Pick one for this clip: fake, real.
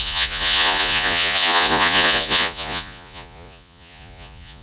fake